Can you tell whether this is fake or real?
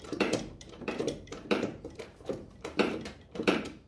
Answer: fake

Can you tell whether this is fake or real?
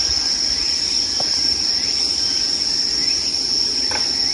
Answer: real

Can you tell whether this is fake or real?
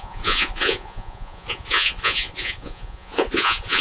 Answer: fake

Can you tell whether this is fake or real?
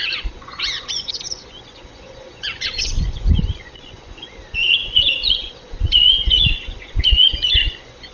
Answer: fake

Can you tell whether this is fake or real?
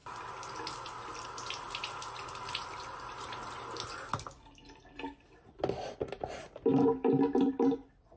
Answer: real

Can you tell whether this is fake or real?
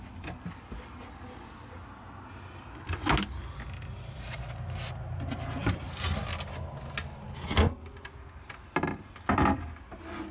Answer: real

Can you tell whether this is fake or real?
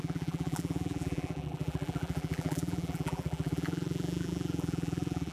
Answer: fake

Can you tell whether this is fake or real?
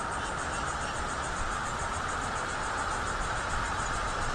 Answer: real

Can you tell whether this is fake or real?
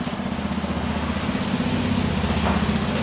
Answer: real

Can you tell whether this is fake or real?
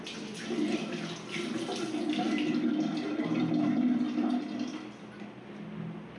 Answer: real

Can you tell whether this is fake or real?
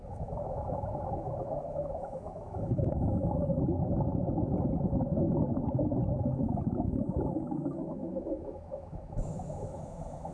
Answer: fake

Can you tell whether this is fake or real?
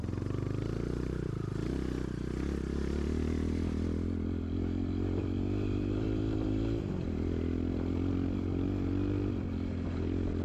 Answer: real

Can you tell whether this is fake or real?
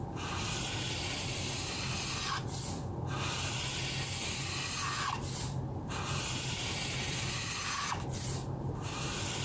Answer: real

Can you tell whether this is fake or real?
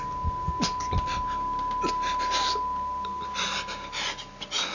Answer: real